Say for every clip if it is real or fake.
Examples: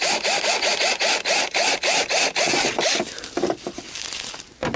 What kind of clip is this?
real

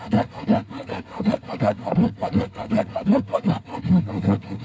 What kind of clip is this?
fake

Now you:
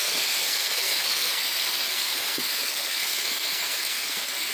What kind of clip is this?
fake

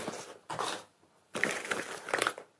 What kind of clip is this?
real